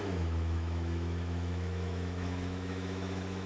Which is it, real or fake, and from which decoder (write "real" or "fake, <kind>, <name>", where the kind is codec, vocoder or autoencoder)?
fake, autoencoder, DAC-VAE